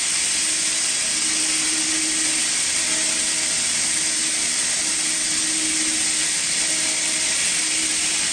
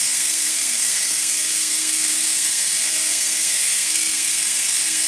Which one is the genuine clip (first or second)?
first